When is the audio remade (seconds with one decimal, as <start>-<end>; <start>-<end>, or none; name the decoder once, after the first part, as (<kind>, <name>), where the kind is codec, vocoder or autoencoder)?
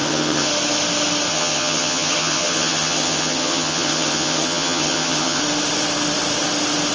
0.0-0.5 (vocoder, HiFi-GAN); 1.3-5.4